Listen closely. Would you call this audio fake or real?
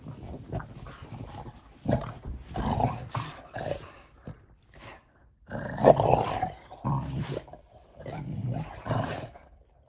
fake